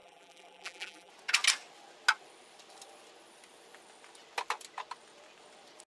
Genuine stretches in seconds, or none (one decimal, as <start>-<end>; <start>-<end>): 1.1-5.9